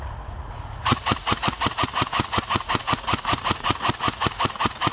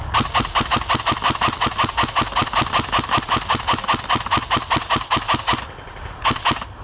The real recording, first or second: second